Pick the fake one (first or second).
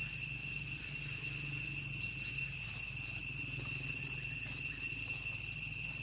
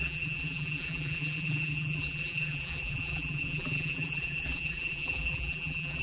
second